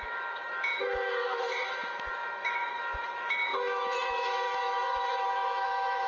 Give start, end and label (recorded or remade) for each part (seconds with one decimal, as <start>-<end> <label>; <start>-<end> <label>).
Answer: 0.0-6.1 remade